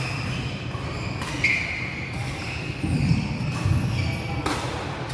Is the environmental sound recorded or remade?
recorded